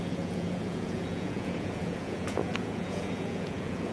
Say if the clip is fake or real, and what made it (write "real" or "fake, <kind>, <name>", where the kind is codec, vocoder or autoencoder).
fake, vocoder, Vocos